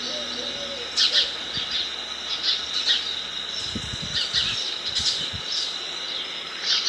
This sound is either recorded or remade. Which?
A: recorded